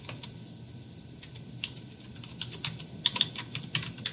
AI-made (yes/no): no